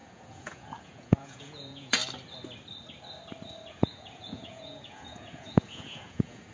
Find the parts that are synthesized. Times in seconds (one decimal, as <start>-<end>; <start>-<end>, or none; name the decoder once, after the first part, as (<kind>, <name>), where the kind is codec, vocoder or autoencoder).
0.0-2.0 (vocoder, Vocos); 3.7-6.5